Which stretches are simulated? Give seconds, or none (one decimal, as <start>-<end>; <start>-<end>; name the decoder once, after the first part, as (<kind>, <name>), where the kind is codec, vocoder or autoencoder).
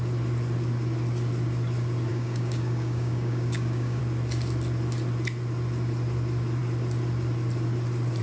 2.1-4.0 (codec, DAC)